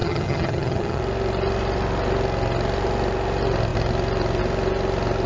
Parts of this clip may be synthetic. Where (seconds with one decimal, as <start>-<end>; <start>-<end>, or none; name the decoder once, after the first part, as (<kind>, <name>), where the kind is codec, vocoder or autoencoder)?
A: 0.0-1.0 (vocoder, HiFi-GAN)